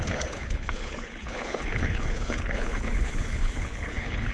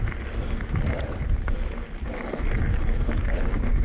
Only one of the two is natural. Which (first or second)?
second